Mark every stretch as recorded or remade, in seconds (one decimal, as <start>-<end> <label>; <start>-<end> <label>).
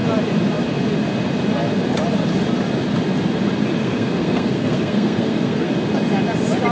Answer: 0.0-3.8 recorded; 3.8-5.7 remade; 5.7-6.7 recorded